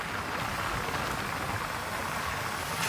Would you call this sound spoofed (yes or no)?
no